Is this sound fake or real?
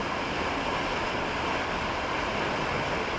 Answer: real